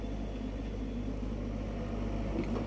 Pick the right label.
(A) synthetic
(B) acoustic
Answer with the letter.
B